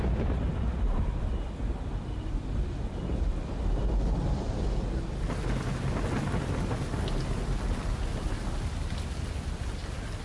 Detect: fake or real real